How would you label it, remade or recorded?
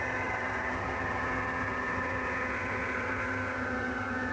remade